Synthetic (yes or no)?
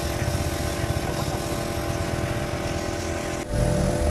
no